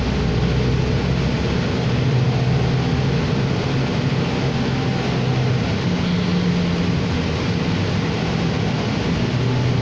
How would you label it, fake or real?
real